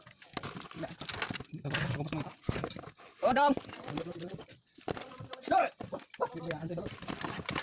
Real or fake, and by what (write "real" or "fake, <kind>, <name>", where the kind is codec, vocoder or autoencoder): real